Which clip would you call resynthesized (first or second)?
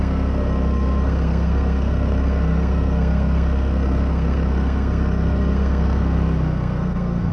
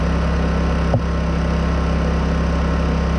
first